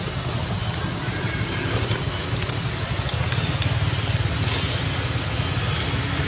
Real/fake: real